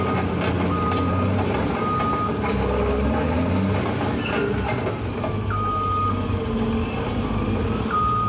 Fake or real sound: real